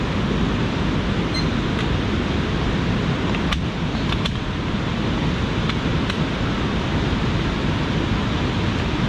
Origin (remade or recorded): recorded